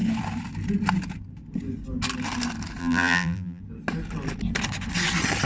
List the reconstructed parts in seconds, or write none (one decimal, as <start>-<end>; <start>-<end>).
2.8-3.6